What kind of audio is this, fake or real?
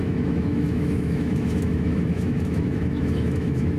fake